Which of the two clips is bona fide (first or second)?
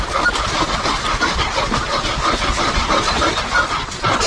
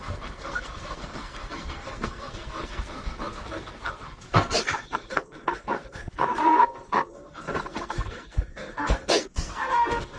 first